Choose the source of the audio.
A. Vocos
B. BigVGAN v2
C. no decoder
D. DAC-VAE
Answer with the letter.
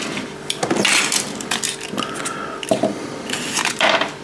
C